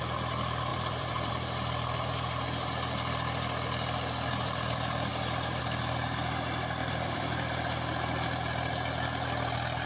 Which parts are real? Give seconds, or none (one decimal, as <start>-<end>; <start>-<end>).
0.0-0.7; 1.3-6.8; 7.5-9.9